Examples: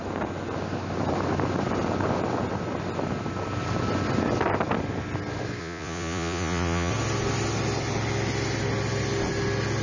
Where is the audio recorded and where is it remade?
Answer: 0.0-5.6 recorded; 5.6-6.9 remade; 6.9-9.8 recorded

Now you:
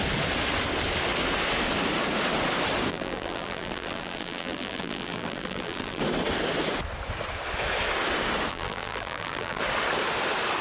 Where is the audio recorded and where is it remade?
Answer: 0.0-2.9 recorded; 2.9-6.0 remade; 6.0-8.5 recorded; 8.5-9.6 remade; 9.6-10.6 recorded

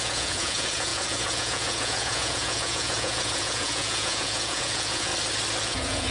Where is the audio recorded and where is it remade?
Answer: 0.0-5.1 remade; 5.1-5.6 recorded; 5.6-6.1 remade

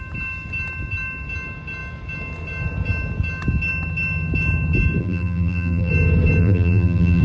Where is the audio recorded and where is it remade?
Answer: 0.0-5.0 recorded; 5.0-5.9 remade; 5.9-6.4 recorded; 6.4-7.2 remade

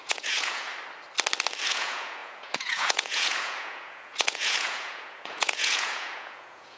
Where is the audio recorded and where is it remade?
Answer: 0.0-0.7 remade; 0.7-1.7 recorded; 1.7-6.8 remade